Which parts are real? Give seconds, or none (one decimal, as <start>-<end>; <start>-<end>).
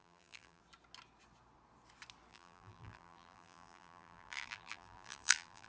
0.6-2.3